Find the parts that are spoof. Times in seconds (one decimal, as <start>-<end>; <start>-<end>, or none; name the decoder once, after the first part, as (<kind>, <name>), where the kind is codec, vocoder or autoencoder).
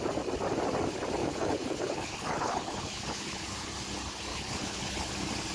1.2-3.7 (codec, HILCodec); 4.3-5.1